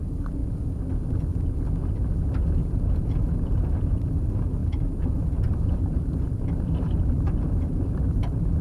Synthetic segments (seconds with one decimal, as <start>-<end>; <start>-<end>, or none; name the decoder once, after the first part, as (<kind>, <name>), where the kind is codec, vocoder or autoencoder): 0.0-0.4 (vocoder, BigVGAN v2); 2.9-8.6